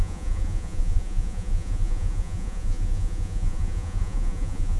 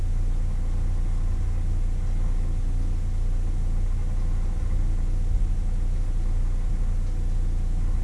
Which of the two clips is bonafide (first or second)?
second